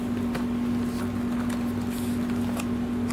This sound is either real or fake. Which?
real